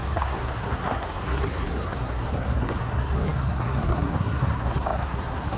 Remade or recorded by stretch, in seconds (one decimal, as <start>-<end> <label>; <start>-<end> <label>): 0.0-5.6 remade